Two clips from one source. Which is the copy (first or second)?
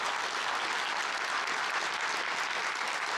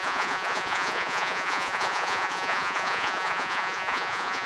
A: second